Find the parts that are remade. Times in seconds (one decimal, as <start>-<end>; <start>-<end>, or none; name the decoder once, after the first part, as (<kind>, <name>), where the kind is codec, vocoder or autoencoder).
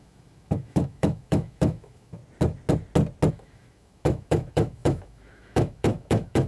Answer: 0.0-2.2 (autoencoder, DAC-VAE); 3.3-6.5